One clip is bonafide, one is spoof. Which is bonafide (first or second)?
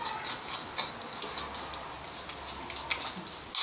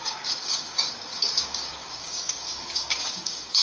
first